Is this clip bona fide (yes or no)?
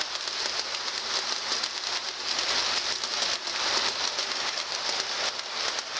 yes